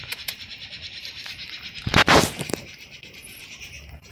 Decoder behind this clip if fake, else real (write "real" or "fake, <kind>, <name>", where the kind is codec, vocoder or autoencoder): fake, vocoder, BigVGAN v2